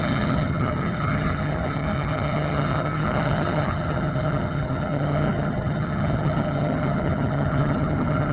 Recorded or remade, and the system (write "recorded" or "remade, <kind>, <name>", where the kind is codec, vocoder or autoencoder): remade, vocoder, HiFi-GAN